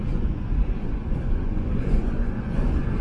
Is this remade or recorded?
remade